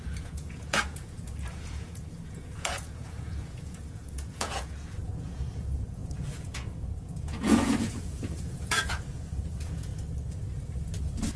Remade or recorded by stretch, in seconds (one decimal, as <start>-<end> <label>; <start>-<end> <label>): 0.0-9.9 remade; 9.9-11.4 recorded